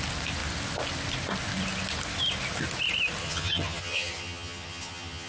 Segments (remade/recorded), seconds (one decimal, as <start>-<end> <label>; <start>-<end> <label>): 0.0-3.2 recorded; 3.2-5.3 remade